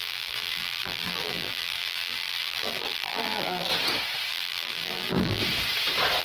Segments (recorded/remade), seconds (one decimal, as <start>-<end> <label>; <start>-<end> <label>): 0.0-3.7 remade; 3.7-4.3 recorded; 4.3-5.4 remade; 5.4-6.2 recorded